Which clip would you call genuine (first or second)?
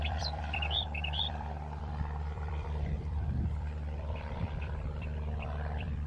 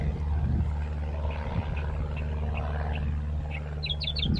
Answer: second